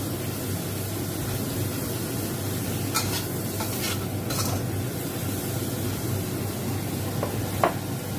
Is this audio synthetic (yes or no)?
no